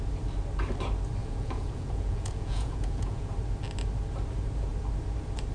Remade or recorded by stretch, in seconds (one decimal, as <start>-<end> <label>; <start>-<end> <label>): 0.0-1.2 recorded; 1.2-3.3 remade; 3.3-5.5 recorded